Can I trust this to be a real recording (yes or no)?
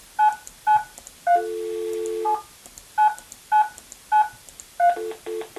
yes